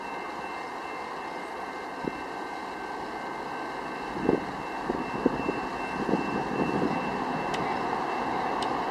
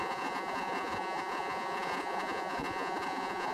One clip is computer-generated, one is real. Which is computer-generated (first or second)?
second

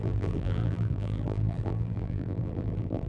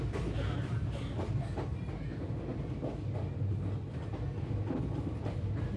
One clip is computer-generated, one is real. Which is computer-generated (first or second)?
first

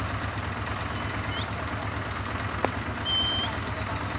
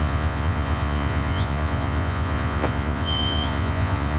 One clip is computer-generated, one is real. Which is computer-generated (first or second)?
second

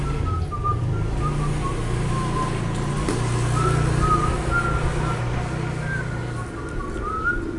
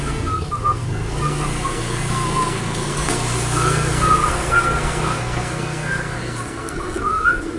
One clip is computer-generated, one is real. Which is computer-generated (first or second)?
second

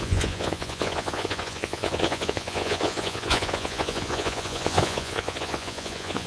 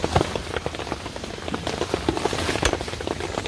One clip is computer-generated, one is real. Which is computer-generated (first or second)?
first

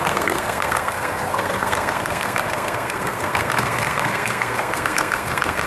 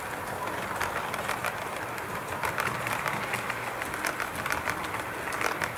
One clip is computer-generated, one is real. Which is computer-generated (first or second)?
first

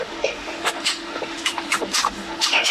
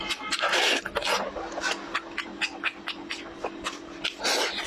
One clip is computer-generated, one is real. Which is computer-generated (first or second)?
first